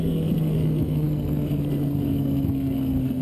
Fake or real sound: fake